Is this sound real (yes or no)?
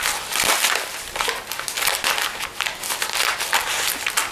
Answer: yes